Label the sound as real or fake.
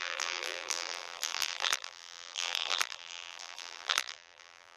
fake